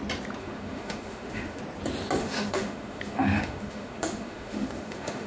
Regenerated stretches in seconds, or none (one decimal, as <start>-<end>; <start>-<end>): 0.4-1.6; 2.2-5.3